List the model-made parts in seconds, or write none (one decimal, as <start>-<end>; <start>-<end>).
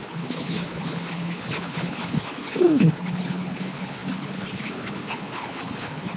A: 0.0-6.2